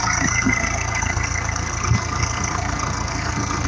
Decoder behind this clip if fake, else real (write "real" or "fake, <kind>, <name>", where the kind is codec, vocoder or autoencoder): fake, codec, SNAC